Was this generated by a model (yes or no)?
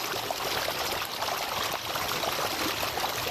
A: no